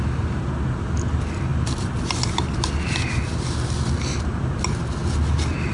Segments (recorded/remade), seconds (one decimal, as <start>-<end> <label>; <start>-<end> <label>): 0.0-5.7 recorded

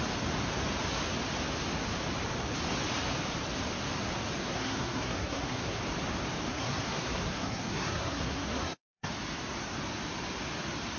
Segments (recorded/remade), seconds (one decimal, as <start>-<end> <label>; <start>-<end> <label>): 0.0-4.4 recorded; 4.4-5.8 remade; 5.8-6.5 recorded; 6.5-9.1 remade; 9.1-11.0 recorded

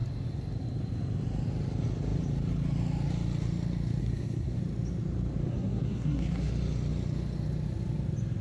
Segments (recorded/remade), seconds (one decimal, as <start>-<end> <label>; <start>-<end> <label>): 0.0-4.0 recorded; 4.0-4.6 remade; 4.6-5.4 recorded; 5.4-6.5 remade; 6.5-8.4 recorded

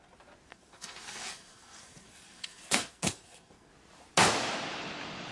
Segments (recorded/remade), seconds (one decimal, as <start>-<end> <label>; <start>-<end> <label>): 0.0-0.5 recorded; 0.5-3.7 remade; 3.7-5.3 recorded

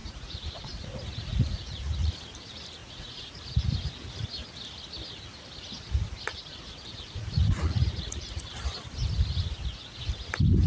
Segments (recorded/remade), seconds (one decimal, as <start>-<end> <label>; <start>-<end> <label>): 0.0-2.1 remade; 2.1-2.8 recorded; 2.8-3.7 remade; 3.7-6.3 recorded; 6.3-8.4 remade; 8.4-9.6 recorded; 9.6-10.1 remade; 10.1-10.7 recorded